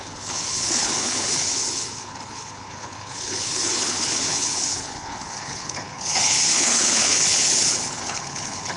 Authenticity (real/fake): fake